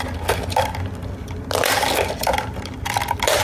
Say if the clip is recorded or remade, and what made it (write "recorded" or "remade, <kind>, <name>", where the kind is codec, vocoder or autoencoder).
recorded